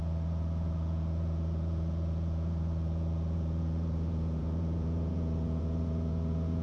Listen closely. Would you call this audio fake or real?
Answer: fake